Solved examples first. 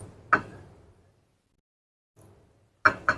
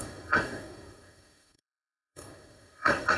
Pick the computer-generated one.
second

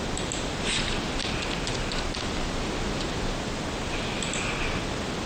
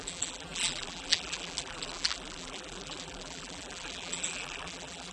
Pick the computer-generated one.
second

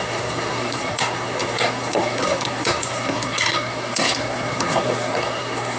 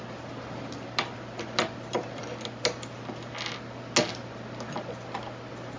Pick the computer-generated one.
first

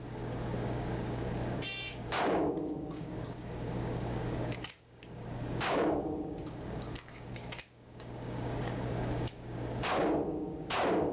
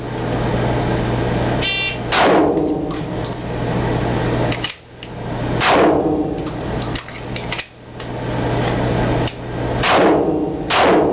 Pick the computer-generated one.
first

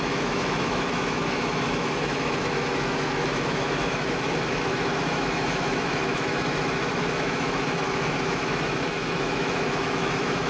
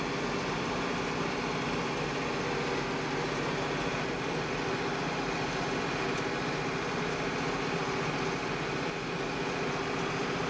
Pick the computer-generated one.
first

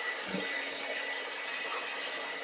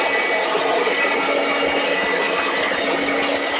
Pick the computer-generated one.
first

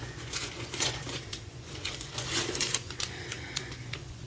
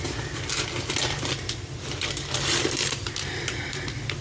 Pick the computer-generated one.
first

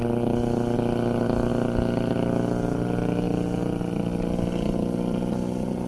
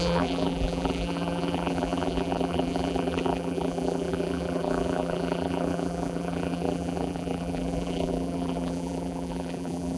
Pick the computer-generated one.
second